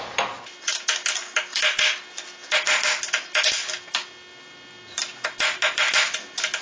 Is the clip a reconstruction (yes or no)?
no